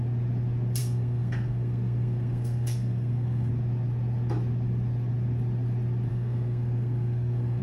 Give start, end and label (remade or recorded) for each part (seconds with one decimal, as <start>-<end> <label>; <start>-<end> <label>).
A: 0.0-0.8 recorded; 0.8-3.5 remade; 3.5-6.1 recorded; 6.1-7.6 remade